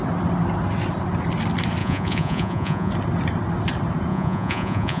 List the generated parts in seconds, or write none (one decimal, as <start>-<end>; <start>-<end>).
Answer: 1.8-2.9; 4.1-5.0